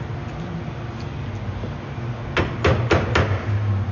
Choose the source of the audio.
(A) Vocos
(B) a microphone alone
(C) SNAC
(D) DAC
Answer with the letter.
B